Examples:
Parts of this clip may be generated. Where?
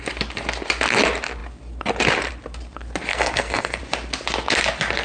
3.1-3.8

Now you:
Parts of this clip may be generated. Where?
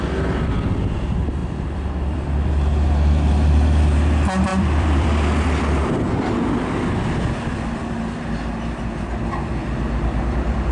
1.4-2.5; 4.5-6.9; 9.6-10.2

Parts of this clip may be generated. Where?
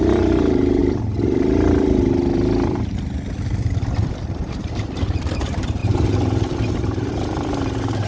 0.0-0.8; 4.4-8.1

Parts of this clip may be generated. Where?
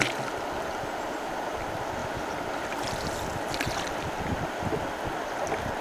none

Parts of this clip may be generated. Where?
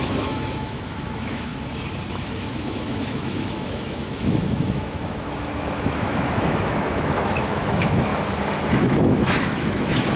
0.0-1.5; 2.1-8.1; 8.7-10.2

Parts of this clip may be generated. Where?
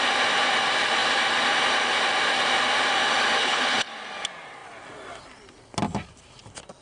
3.4-3.9